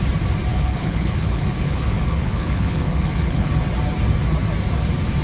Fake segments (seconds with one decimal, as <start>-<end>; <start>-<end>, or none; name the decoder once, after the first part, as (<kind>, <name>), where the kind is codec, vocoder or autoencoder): 0.5-3.5 (codec, HILCodec)